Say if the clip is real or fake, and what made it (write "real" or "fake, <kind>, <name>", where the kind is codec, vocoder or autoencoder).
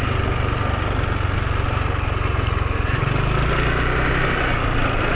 real